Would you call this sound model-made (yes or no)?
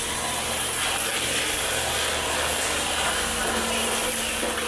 no